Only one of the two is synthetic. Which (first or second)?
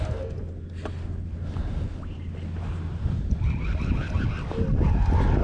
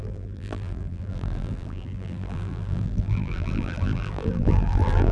second